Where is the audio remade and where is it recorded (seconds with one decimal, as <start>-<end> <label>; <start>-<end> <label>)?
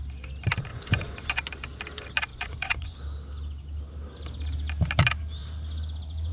0.0-0.7 recorded; 0.7-1.3 remade; 1.3-2.3 recorded; 2.3-3.0 remade; 3.0-6.3 recorded